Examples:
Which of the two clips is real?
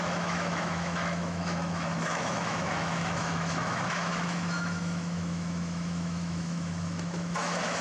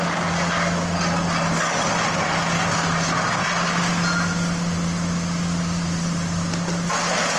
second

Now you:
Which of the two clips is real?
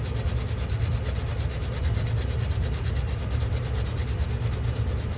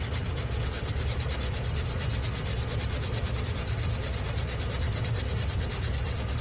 first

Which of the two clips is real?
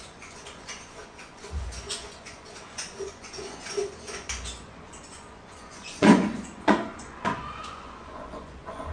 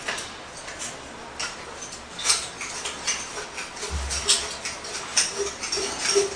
second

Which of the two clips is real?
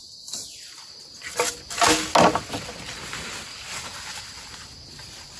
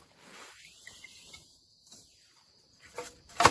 first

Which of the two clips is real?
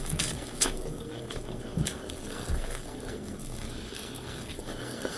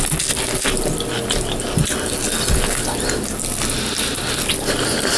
second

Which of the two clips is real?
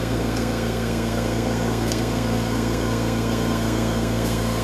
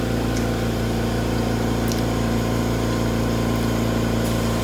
second